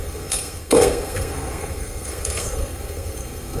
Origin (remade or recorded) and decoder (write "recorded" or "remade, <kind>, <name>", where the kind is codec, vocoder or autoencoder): remade, codec, SNAC